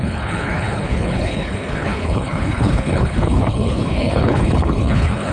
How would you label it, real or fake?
fake